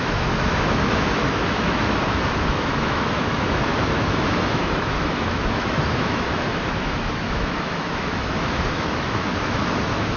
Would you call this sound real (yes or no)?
no